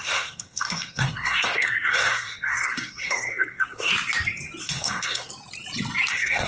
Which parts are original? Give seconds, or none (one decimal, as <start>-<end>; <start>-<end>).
3.9-4.6; 5.3-6.1